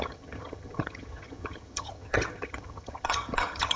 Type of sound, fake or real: fake